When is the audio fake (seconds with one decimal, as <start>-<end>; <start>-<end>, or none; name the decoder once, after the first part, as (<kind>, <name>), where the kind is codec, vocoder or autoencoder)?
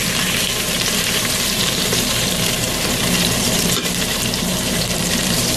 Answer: 0.0-5.6 (vocoder, BigVGAN v2)